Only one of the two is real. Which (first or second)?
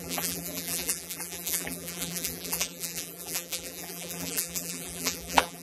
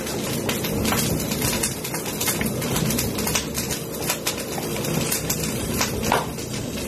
second